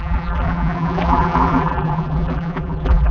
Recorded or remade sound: remade